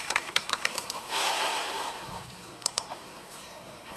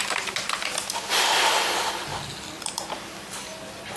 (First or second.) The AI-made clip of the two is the first